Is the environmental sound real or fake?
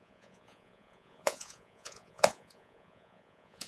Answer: fake